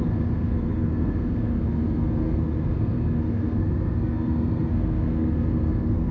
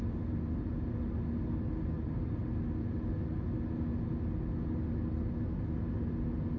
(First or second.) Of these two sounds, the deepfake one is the first